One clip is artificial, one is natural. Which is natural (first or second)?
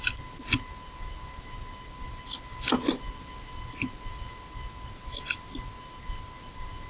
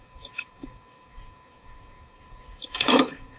first